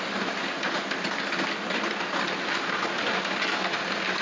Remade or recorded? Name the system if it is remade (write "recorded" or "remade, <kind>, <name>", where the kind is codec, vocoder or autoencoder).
recorded